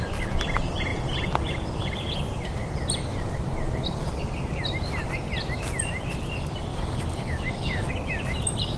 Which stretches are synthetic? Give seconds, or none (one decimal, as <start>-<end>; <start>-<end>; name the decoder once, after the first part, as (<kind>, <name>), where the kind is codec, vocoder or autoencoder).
6.7-7.9 (codec, DAC)